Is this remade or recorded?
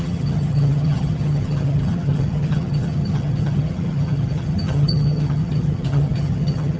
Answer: remade